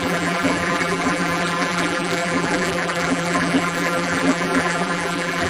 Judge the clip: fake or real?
fake